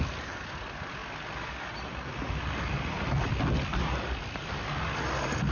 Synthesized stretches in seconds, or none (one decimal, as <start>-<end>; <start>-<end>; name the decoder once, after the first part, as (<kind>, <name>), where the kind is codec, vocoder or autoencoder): none